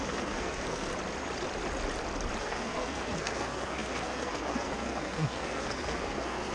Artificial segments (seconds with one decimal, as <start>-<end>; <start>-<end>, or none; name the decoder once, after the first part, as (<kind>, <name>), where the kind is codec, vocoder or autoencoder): 0.0-0.9 (codec, SNAC); 2.4-6.5